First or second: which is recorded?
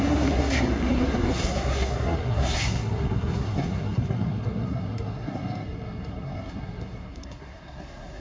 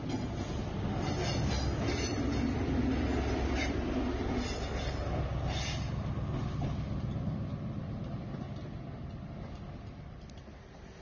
second